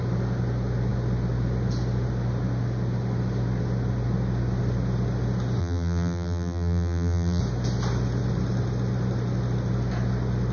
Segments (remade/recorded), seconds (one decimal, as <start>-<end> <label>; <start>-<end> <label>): 0.0-5.6 recorded; 5.6-7.4 remade; 7.4-10.5 recorded